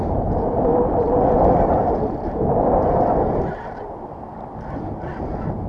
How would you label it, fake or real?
real